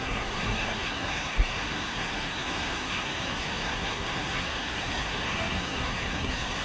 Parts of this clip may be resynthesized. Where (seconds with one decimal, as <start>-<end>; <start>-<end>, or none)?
0.0-6.6